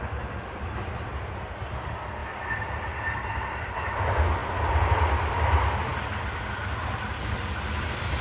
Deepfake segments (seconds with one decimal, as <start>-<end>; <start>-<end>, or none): none